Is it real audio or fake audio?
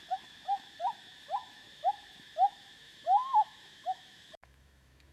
fake